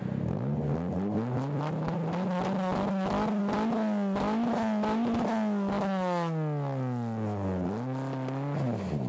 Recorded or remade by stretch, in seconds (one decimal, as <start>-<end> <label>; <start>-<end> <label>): 0.0-9.1 recorded